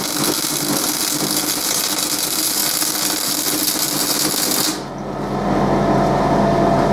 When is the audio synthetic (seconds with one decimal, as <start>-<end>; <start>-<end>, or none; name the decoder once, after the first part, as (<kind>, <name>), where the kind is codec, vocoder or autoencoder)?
none